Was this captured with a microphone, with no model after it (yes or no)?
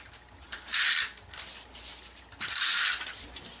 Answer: yes